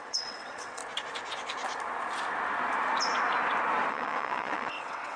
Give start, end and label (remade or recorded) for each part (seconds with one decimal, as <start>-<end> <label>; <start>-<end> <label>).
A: 0.0-0.8 remade; 0.8-3.9 recorded; 3.9-5.2 remade